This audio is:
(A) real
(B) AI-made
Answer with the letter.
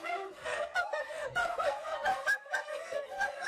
B